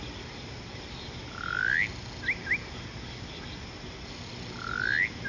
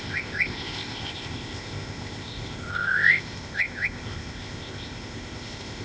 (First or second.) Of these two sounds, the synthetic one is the second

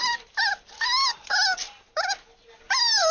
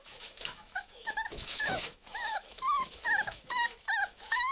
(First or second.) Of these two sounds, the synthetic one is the second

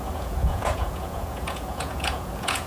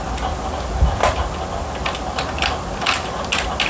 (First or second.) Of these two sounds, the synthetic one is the first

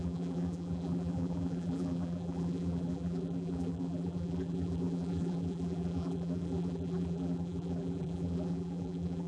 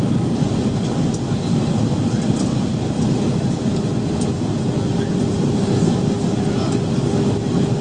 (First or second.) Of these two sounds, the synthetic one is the first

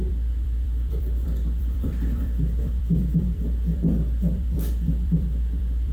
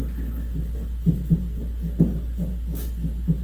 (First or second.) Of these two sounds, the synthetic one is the first